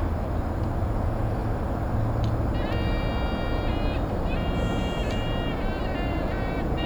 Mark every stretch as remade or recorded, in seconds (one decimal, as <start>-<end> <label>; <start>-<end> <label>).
0.0-0.8 recorded; 0.8-1.4 remade; 1.4-4.2 recorded; 4.2-5.0 remade; 5.0-6.1 recorded; 6.1-6.9 remade